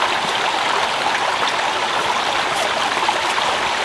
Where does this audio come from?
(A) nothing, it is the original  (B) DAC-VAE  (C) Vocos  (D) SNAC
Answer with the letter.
A